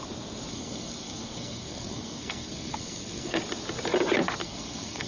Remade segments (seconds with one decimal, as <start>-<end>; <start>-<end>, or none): 0.5-3.4; 4.4-5.1